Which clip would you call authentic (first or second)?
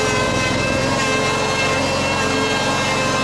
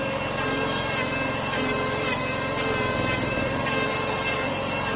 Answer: first